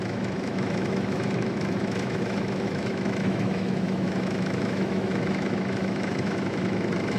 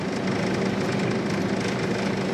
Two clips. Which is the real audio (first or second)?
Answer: second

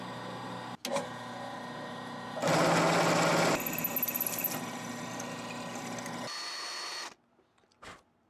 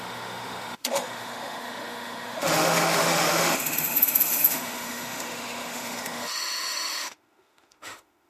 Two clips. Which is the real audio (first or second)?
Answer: first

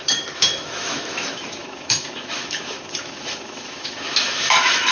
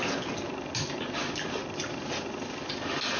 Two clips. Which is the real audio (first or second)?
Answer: second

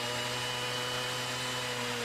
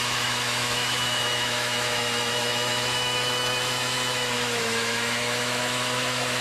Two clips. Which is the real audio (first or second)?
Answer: first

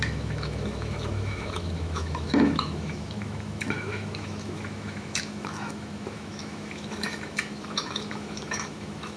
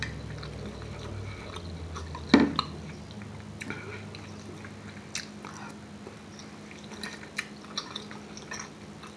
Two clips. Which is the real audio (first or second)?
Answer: second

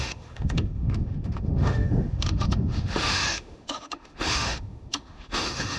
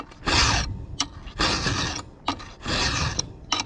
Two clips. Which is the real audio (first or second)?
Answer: second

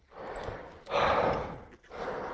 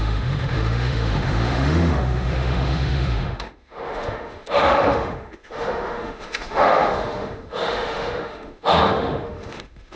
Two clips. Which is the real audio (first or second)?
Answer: first